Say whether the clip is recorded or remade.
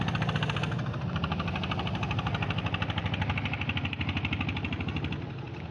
recorded